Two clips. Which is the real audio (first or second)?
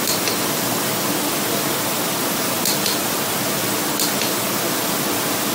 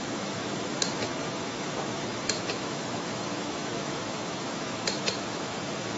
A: first